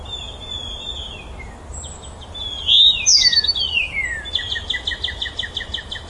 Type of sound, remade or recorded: recorded